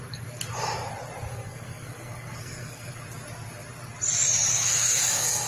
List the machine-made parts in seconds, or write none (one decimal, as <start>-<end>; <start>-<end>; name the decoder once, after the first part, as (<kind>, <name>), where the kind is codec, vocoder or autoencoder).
1.3-3.0 (codec, SNAC); 4.5-5.5